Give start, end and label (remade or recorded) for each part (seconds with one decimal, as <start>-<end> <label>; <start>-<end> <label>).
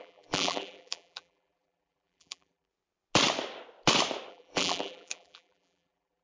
0.0-2.7 remade; 2.7-4.3 recorded; 4.3-6.2 remade